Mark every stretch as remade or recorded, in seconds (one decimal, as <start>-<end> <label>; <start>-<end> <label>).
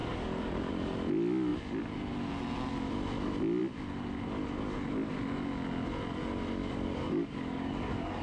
0.0-0.7 remade; 0.7-6.6 recorded; 6.6-8.2 remade